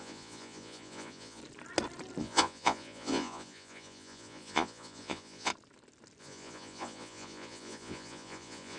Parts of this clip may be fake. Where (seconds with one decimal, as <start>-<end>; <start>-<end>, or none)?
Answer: 0.0-1.4; 2.2-5.5; 6.2-8.8